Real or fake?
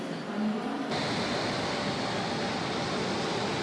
real